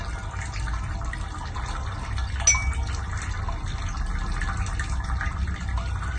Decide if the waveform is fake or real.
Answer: real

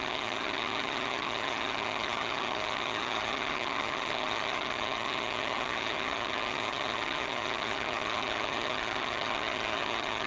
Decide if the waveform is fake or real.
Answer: fake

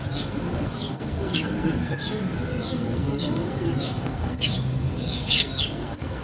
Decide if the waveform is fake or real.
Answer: fake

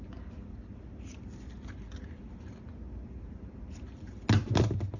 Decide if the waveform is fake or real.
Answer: real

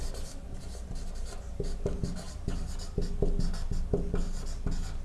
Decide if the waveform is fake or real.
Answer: real